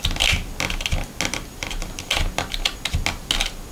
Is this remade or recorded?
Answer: recorded